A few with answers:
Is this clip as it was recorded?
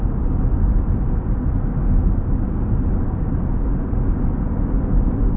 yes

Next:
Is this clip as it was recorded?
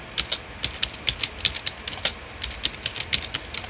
yes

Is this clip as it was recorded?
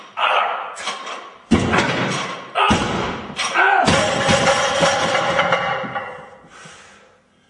yes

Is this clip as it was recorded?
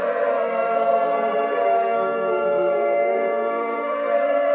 no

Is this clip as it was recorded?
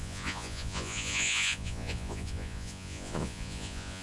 no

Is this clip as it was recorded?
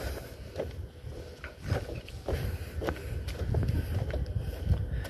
yes